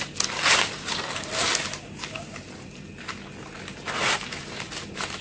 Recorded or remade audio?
recorded